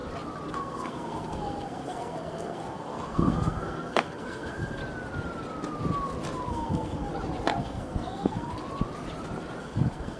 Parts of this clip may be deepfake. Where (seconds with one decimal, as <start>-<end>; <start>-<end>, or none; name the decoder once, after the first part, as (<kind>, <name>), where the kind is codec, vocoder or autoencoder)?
0.5-4.8 (codec, SNAC); 6.5-7.1; 7.6-8.5; 9.6-10.2